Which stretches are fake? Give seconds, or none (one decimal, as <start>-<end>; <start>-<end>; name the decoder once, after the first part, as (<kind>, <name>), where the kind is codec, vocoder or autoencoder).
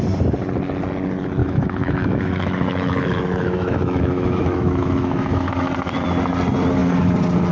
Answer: 1.4-5.5 (autoencoder, DAC-VAE)